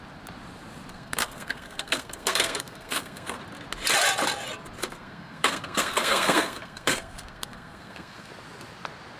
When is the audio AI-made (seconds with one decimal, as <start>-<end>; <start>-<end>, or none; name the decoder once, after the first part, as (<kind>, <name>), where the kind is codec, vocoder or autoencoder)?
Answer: 0.9-3.4 (codec, SNAC); 4.8-8.3